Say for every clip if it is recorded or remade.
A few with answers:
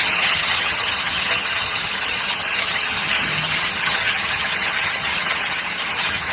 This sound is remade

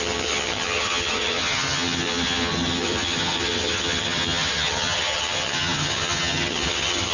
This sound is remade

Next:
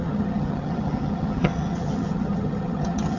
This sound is remade